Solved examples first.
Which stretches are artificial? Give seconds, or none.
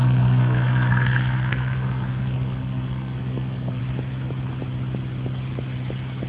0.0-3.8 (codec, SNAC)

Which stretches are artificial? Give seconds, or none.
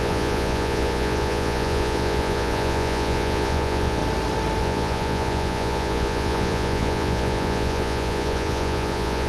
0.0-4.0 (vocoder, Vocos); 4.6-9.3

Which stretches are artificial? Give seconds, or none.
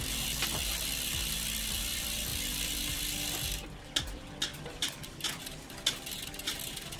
2.3-3.0 (vocoder, BigVGAN v2); 4.5-5.4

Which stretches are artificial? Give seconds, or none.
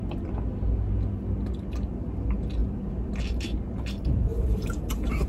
4.3-4.8 (vocoder, BigVGAN v2)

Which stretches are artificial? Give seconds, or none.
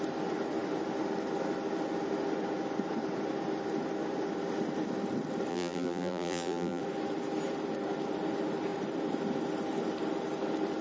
5.5-6.8 (vocoder, BigVGAN v2)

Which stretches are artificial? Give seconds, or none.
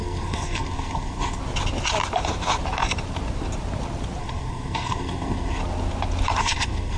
0.0-1.4 (codec, SNAC); 4.2-5.6; 6.4-7.0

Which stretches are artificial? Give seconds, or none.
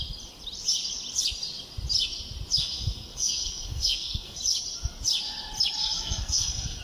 2.6-4.4 (codec, SNAC); 5.8-6.8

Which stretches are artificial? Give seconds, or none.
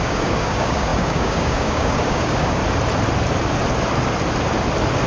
0.0-2.6 (codec, DAC)